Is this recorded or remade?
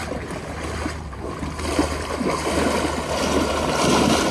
recorded